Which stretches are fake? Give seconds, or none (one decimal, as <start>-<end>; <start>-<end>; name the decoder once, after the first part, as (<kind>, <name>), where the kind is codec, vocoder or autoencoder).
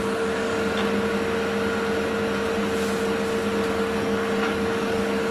0.0-0.5 (codec, DAC); 3.7-5.3